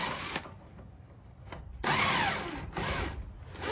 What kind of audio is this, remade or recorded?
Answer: recorded